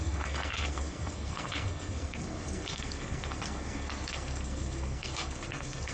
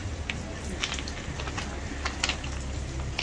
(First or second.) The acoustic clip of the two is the second